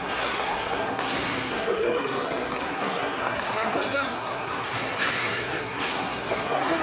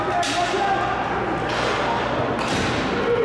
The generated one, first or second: first